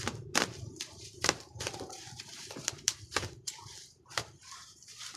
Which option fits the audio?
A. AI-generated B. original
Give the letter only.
A